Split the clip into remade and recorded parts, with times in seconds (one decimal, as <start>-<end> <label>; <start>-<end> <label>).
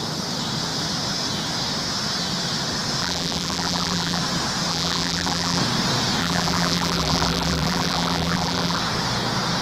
0.0-3.0 recorded; 3.0-4.2 remade; 4.2-4.7 recorded; 4.7-5.6 remade; 5.6-6.2 recorded; 6.2-8.8 remade; 8.8-9.6 recorded